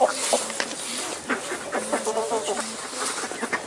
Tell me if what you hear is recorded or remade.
recorded